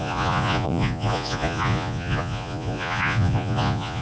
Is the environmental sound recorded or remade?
remade